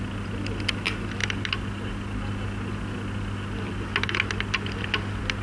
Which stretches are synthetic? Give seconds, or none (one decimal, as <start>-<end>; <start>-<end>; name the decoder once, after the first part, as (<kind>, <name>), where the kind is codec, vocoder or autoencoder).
none